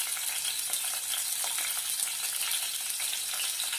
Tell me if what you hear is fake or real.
real